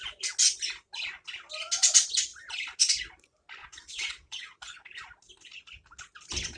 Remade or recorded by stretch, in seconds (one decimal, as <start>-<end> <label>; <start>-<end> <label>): 0.0-3.6 recorded; 3.6-4.8 remade; 4.8-6.6 recorded